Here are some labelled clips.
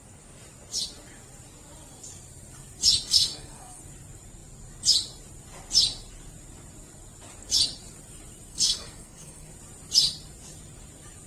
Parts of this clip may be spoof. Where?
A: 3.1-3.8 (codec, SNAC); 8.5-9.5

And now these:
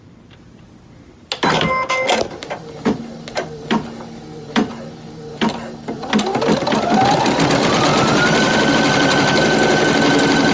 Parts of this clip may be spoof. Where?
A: none

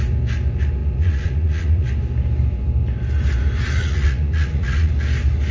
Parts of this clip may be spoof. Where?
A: 0.8-1.9 (vocoder, Vocos); 3.8-4.9

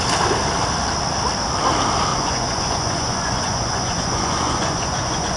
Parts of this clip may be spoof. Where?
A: 2.1-5.4 (vocoder, Vocos)

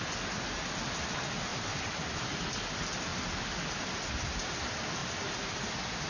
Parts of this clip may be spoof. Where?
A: 1.5-2.2 (vocoder, BigVGAN v2)

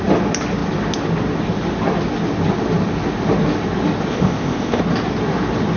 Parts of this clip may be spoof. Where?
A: 4.1-4.8 (codec, ZipCodec)

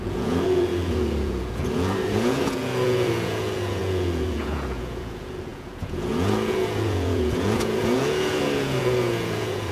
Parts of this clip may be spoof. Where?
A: 0.0-9.7 (vocoder, Vocos)

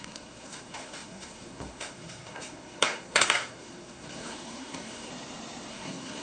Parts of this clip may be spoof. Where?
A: 0.0-5.1 (codec, SNAC); 5.7-6.2